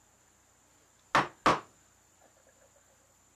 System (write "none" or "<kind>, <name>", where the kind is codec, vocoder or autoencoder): none